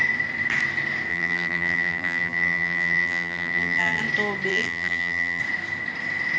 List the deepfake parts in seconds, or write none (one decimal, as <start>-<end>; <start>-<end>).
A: 1.1-4.0; 4.5-5.4